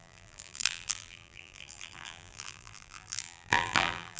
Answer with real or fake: fake